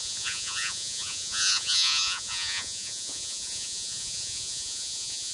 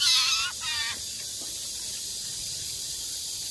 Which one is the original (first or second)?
second